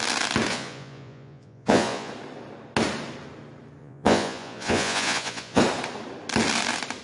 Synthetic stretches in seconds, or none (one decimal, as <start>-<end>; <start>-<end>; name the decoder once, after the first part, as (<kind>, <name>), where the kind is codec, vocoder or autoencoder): 0.5-2.1 (vocoder, Vocos); 3.8-5.6